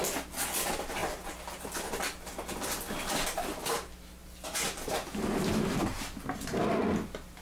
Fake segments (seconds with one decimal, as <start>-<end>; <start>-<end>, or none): none